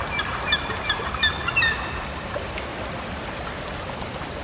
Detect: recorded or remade recorded